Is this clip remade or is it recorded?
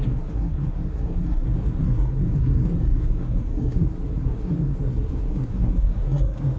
remade